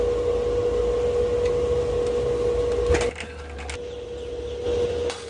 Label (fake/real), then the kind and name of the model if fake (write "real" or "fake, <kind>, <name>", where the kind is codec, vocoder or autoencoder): real